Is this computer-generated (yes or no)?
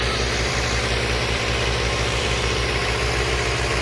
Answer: yes